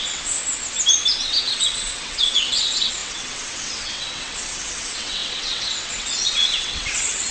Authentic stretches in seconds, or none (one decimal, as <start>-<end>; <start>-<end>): 0.4-1.3